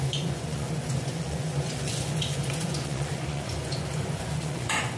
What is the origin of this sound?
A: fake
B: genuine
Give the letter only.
A